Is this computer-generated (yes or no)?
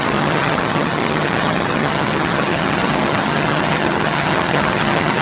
yes